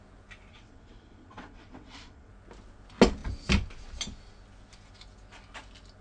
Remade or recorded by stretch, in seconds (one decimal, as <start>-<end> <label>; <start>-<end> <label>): 0.0-0.5 recorded; 0.5-2.3 remade; 2.3-6.0 recorded

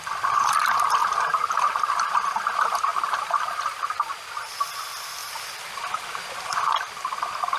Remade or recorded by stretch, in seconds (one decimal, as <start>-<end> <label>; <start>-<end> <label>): 0.0-2.9 recorded; 2.9-4.1 remade; 4.1-5.2 recorded; 5.2-5.7 remade; 5.7-7.6 recorded

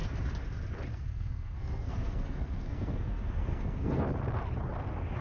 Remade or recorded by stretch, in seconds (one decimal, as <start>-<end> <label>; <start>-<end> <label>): 0.0-0.9 recorded; 0.9-4.0 remade; 4.0-5.2 recorded

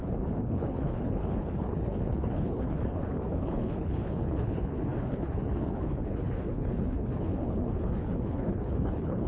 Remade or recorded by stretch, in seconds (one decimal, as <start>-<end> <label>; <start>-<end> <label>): 0.0-9.3 remade

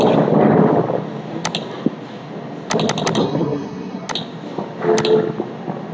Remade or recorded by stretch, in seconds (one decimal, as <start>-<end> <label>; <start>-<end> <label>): 0.0-3.2 recorded; 3.2-4.1 remade; 4.1-5.9 recorded